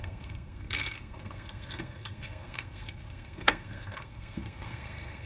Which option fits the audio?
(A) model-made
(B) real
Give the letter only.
A